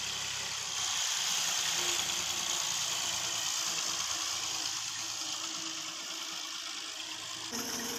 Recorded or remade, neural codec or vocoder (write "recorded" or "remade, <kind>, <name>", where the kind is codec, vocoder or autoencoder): recorded